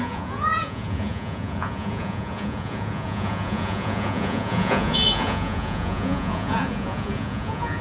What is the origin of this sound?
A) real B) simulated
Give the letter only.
B